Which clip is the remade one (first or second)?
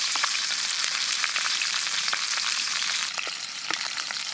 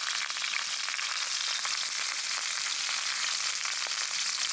first